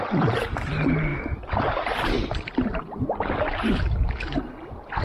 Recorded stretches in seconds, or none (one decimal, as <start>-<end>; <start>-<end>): 0.0-5.0

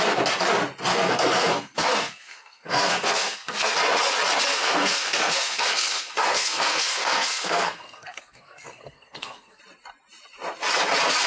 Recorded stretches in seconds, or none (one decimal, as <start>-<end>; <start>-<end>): 0.0-0.9; 3.7-4.5; 9.6-11.3